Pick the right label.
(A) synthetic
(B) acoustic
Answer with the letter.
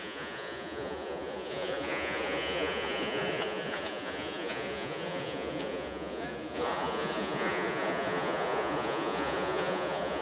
A